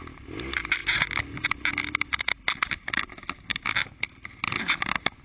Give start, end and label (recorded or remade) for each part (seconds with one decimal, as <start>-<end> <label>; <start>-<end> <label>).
0.0-5.2 recorded